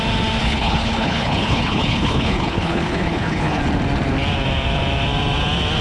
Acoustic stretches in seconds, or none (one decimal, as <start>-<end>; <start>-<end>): 0.0-0.4; 3.6-5.8